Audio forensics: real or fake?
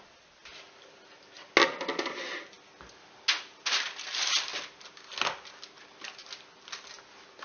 real